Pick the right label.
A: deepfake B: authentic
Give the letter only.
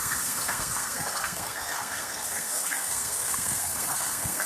A